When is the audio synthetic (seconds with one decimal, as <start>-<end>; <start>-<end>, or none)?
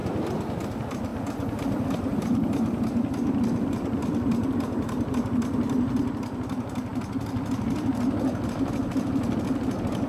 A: none